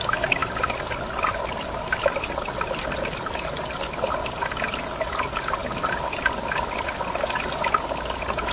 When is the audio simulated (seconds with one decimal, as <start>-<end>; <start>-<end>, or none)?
none